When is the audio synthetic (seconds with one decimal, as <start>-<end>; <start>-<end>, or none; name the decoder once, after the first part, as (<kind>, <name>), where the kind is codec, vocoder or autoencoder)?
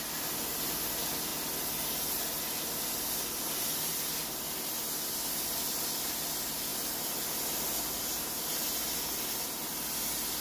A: none